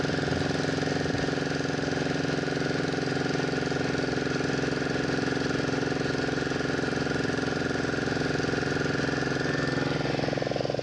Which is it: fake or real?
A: real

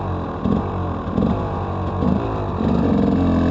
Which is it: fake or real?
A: real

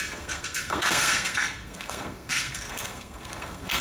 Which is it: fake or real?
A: fake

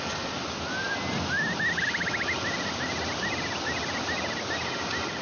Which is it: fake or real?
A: real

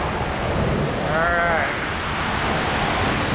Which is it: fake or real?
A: real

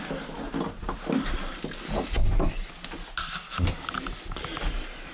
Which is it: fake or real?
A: real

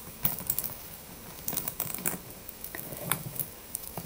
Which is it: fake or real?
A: fake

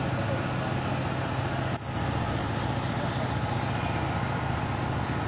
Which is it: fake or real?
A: real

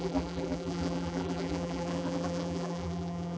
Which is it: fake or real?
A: fake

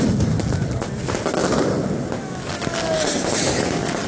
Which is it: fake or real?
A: real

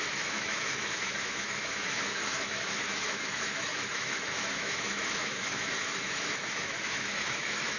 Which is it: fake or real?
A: fake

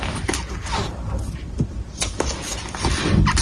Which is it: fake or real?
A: real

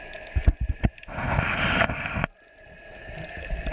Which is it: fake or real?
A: real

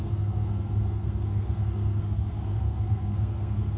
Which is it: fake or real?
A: fake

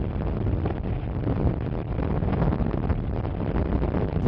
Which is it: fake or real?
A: real